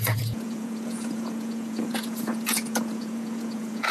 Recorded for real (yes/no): no